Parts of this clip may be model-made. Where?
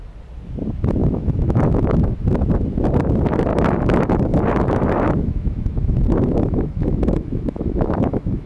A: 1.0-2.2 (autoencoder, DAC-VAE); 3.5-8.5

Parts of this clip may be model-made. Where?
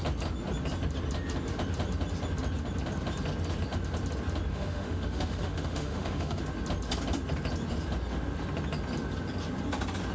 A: 4.5-6.4 (autoencoder, DAC-VAE)